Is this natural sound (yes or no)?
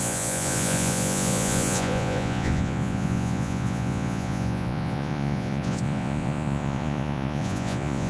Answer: no